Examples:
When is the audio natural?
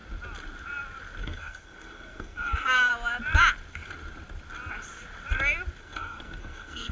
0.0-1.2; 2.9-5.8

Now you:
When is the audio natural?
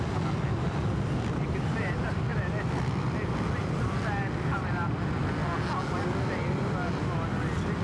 0.0-7.8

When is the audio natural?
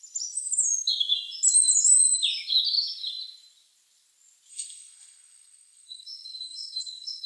0.0-4.5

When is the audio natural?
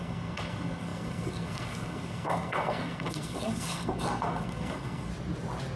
5.1-5.8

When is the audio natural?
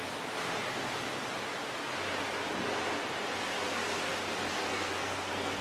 0.0-4.5